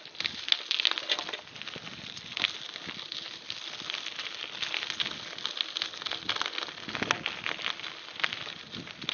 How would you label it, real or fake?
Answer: real